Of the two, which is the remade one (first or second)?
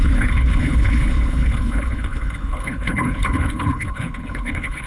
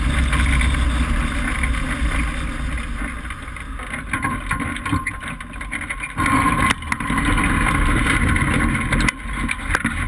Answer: first